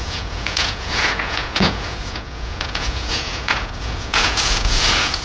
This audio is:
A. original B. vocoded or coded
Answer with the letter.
B